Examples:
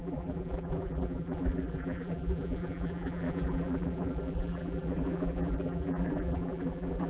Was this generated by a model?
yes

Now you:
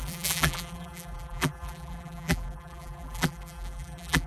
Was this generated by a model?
yes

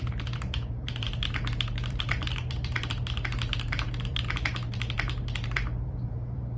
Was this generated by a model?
yes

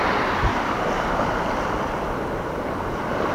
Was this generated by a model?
no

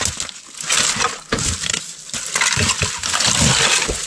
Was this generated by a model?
no